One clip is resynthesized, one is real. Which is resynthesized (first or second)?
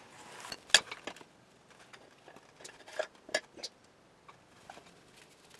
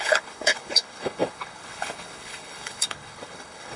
second